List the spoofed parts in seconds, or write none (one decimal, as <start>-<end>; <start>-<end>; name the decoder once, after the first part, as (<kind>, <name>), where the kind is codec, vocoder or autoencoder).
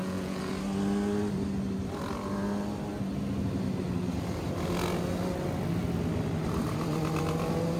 0.0-0.5 (vocoder, Vocos)